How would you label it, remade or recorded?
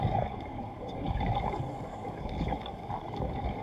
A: remade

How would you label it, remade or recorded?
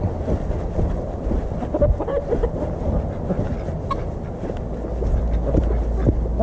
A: recorded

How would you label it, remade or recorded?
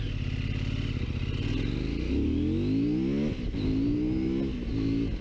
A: recorded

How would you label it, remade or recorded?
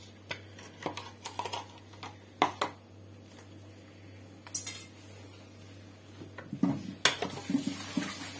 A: recorded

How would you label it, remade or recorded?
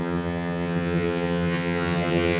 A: remade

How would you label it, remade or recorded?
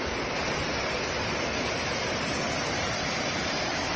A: remade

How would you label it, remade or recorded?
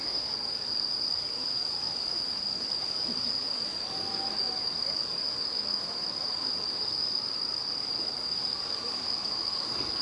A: remade